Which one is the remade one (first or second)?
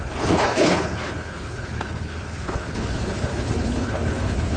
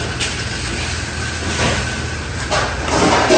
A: first